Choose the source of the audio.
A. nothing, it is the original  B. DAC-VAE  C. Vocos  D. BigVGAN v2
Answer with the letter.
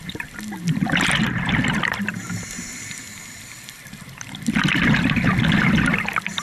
A